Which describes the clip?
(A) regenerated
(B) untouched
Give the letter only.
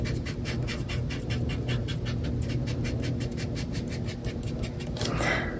B